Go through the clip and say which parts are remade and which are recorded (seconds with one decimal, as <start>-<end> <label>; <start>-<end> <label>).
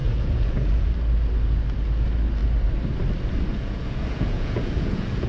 0.0-0.9 remade; 0.9-3.5 recorded; 3.5-5.3 remade